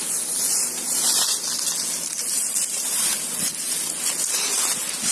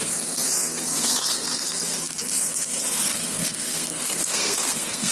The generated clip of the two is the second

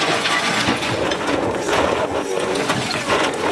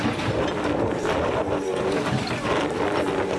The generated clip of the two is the first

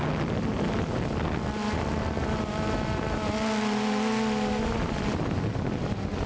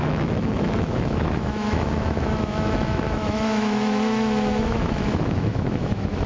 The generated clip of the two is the second